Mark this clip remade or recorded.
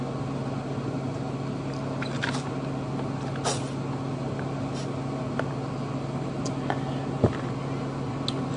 recorded